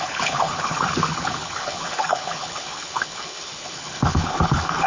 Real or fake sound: fake